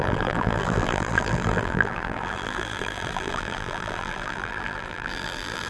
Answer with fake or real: fake